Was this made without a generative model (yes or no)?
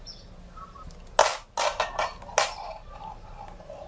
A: yes